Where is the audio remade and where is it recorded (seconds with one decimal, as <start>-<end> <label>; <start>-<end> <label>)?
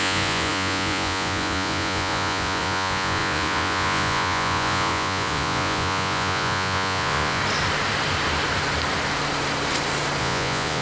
0.0-7.4 remade; 7.4-10.2 recorded; 10.2-10.8 remade